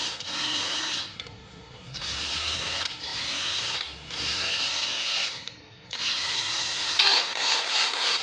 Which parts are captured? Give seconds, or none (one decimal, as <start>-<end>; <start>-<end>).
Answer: none